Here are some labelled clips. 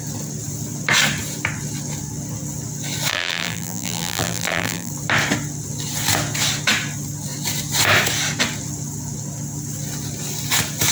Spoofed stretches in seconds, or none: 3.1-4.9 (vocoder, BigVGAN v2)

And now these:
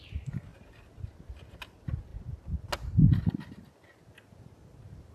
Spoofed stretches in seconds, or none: none

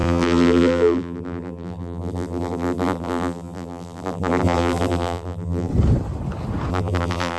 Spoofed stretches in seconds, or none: 0.0-5.7 (vocoder, BigVGAN v2); 6.7-7.4

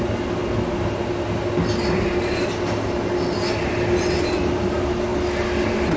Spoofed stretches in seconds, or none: none

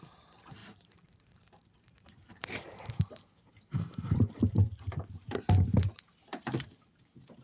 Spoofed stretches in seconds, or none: 0.0-7.4 (vocoder, BigVGAN v2)

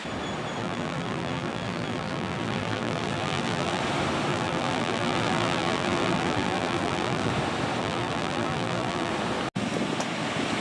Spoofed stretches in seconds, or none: 0.6-3.8 (vocoder, BigVGAN v2); 4.3-7.3; 7.8-9.1

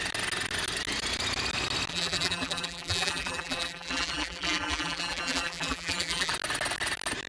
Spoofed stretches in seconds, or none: 1.9-6.3 (vocoder, BigVGAN v2)

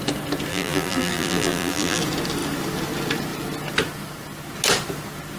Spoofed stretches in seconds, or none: 0.5-2.0 (vocoder, BigVGAN v2)